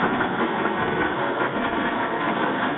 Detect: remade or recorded remade